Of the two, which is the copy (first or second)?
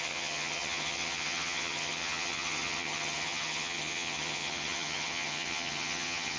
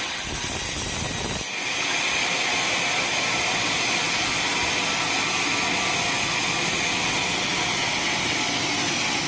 first